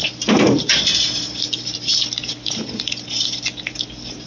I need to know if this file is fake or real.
real